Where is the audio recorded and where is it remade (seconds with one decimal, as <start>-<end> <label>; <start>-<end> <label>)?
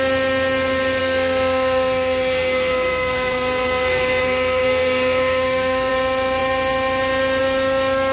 0.0-1.0 recorded; 1.0-5.9 remade; 5.9-8.1 recorded